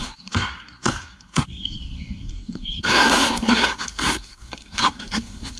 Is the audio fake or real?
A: fake